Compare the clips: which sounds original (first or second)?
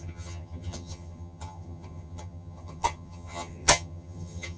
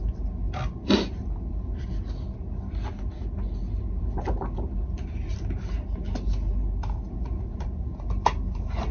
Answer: second